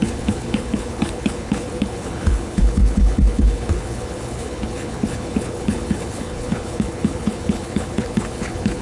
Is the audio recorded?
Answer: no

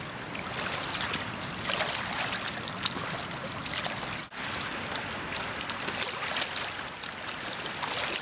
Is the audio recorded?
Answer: yes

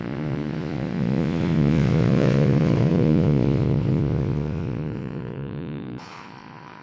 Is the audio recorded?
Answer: no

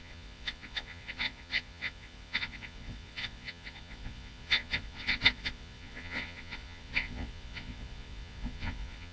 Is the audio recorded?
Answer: no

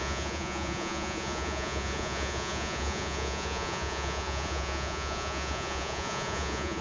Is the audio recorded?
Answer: no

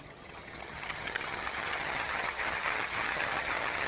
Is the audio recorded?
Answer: no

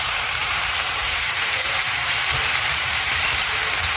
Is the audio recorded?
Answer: no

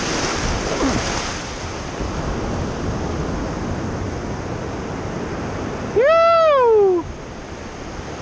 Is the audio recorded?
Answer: yes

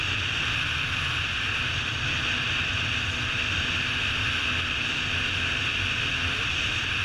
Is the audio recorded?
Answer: yes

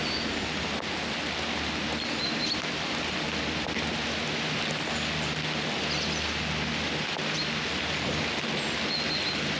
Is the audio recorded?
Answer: yes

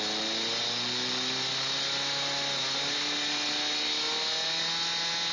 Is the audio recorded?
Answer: yes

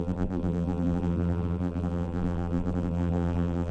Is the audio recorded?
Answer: no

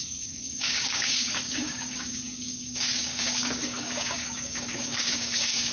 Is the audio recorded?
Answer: no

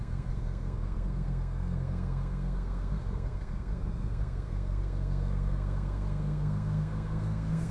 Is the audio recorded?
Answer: no